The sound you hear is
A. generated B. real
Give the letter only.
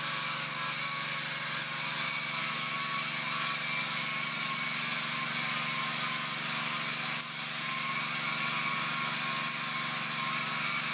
B